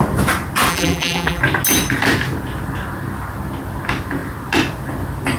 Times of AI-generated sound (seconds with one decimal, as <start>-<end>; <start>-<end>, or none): 0.7-1.4